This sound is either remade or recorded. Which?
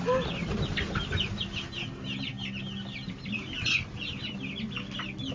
recorded